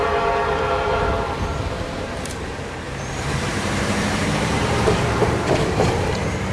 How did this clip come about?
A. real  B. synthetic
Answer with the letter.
B